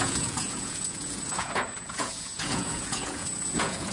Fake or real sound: fake